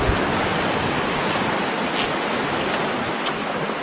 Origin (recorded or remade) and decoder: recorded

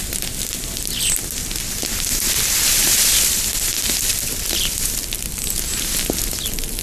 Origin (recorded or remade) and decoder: recorded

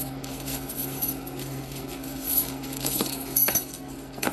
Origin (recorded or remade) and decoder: remade, codec, SNAC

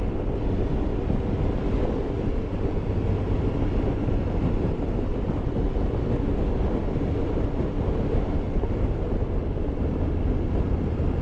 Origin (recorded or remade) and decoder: recorded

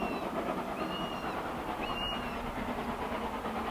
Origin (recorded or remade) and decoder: recorded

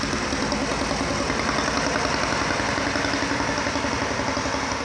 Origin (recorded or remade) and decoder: recorded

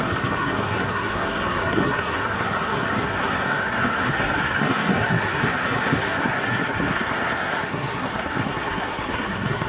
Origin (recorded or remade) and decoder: remade, codec, SNAC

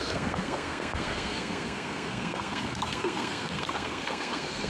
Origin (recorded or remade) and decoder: remade, codec, SNAC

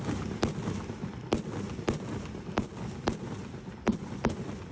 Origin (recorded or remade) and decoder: recorded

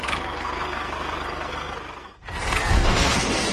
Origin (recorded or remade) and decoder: remade, codec, SNAC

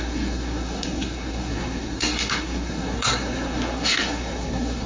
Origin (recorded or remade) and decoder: remade, codec, SNAC